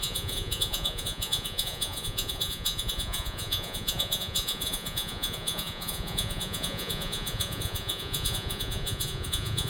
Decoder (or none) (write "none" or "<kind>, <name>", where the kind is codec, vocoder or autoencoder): vocoder, Vocos